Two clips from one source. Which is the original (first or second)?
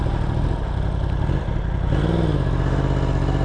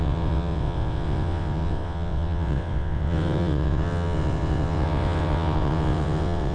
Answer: first